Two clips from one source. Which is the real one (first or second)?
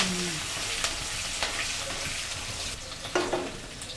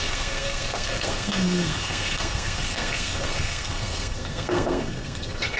first